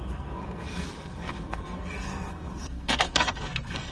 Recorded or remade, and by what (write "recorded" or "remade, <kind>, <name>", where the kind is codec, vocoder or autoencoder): remade, codec, SNAC